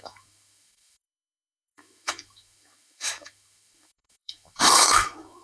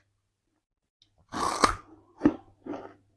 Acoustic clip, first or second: second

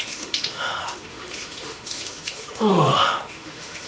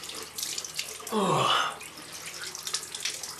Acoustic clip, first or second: second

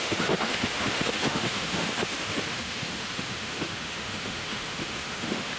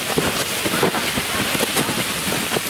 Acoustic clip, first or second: second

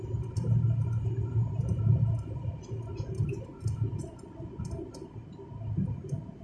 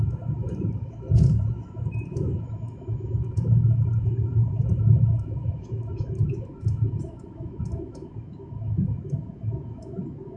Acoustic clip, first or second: first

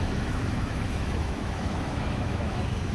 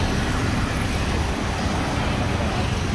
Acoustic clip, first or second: second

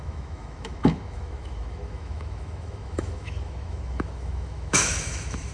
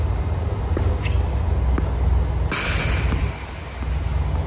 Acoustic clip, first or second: second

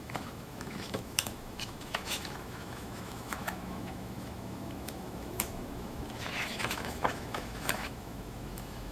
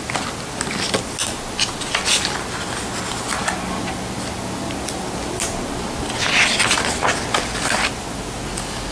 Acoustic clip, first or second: second